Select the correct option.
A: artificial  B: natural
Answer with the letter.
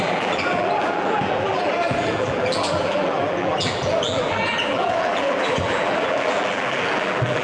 A